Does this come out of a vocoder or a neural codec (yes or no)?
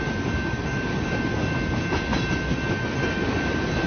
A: no